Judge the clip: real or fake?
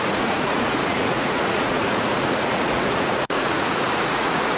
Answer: fake